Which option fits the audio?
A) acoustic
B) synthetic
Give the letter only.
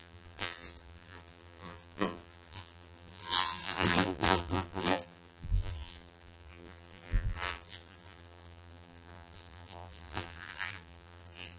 B